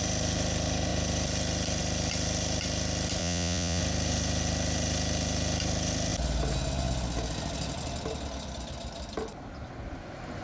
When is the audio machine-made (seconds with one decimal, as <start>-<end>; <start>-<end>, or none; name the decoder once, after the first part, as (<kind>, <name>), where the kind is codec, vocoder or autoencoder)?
3.2-3.8 (vocoder, Vocos)